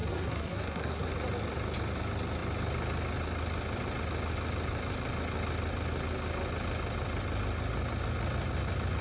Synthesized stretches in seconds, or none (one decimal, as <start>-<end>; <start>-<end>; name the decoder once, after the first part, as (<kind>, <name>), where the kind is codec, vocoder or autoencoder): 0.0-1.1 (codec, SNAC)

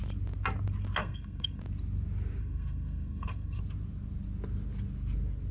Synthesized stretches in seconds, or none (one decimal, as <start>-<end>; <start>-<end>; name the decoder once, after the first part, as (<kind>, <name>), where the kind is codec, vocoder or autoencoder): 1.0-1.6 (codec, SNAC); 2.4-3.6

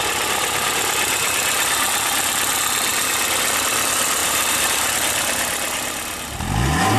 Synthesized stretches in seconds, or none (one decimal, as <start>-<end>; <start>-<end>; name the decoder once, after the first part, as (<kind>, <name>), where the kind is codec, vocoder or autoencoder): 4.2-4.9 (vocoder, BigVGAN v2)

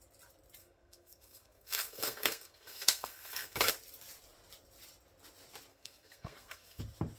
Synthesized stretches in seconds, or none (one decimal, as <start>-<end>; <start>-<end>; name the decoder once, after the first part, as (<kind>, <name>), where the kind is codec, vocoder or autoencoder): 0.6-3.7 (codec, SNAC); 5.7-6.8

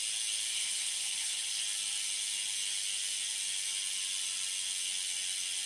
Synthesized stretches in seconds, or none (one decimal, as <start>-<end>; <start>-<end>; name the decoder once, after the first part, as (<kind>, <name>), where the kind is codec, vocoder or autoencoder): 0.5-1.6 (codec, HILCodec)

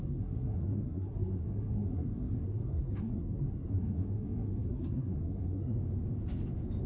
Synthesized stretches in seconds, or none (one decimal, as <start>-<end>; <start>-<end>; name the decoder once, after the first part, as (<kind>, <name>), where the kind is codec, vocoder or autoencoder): 0.0-5.8 (codec, SNAC)